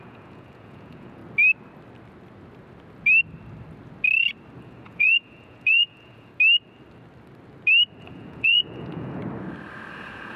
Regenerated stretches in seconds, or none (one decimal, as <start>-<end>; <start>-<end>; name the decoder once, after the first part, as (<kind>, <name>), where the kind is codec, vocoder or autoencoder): 0.0-1.2 (vocoder, Vocos); 4.6-6.3; 8.0-9.2; 9.9-10.4